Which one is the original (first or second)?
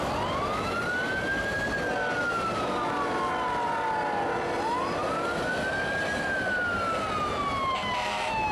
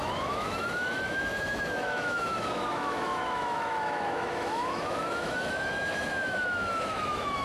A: first